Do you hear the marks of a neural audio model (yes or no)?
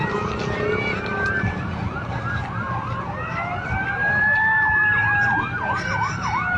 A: no